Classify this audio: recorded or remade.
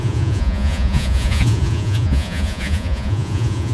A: remade